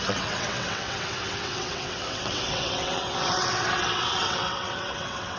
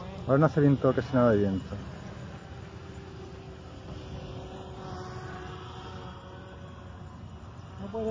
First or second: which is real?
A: second